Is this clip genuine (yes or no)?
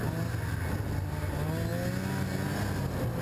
yes